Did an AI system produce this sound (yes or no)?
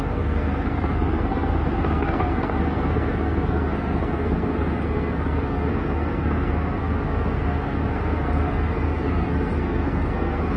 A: yes